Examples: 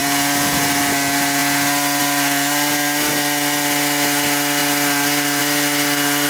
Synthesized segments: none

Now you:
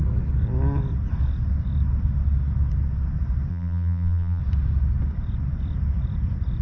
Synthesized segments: 3.5-4.4 (vocoder, BigVGAN v2)

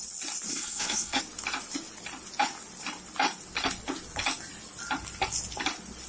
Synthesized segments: 0.5-1.2 (codec, SNAC)

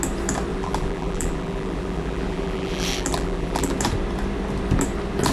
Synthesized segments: 0.5-3.7 (vocoder, BigVGAN v2)

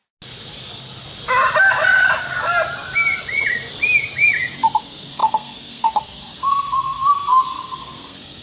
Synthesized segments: 4.8-8.4 (codec, SNAC)

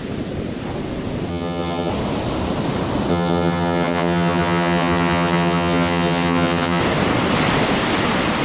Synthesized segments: 1.3-1.9 (vocoder, HiFi-GAN); 3.1-6.8

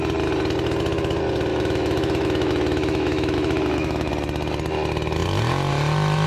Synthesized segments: 1.5-4.1 (autoencoder, DAC-VAE)